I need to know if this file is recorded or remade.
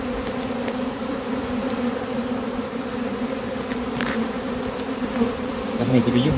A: remade